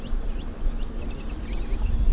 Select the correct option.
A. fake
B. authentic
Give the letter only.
B